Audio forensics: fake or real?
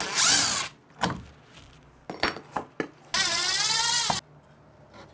real